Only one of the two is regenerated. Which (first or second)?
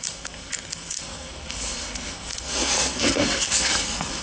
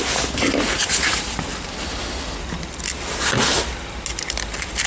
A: first